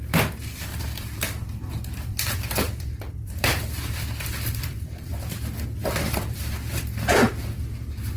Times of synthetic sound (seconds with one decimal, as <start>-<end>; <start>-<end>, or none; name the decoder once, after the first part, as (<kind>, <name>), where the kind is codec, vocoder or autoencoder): 0.7-5.1 (vocoder, BigVGAN v2); 5.8-7.6